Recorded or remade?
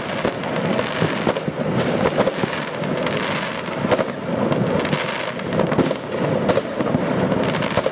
recorded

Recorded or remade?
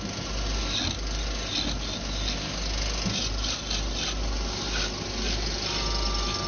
recorded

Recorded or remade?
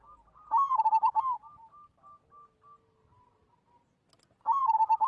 recorded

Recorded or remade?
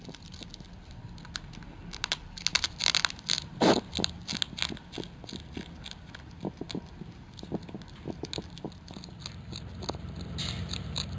recorded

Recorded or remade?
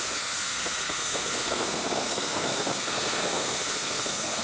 remade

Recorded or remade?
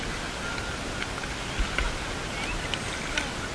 recorded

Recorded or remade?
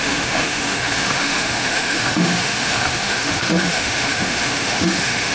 remade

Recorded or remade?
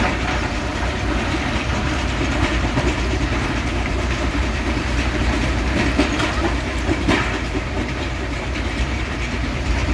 remade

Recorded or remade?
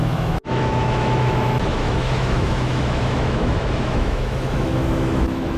remade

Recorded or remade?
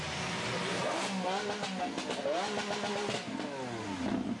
recorded